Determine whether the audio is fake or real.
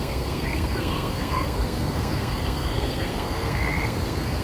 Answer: fake